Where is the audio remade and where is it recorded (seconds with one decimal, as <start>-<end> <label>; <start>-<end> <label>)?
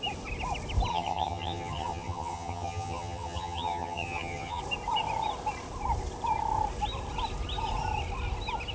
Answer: 0.0-0.9 recorded; 0.9-4.6 remade; 4.6-8.7 recorded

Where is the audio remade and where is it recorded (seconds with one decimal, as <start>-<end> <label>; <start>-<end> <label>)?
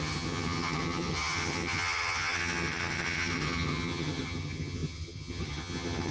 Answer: 0.0-6.1 remade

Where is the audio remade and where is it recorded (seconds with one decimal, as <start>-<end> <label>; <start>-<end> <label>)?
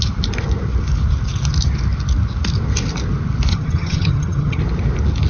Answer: 0.0-3.5 recorded; 3.5-4.6 remade; 4.6-5.3 recorded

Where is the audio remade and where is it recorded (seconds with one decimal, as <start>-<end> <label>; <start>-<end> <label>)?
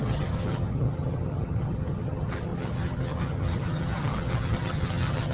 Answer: 0.0-5.3 remade